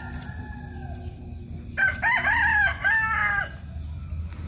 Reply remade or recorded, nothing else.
recorded